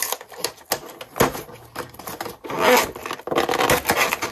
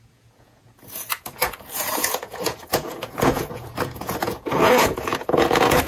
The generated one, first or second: second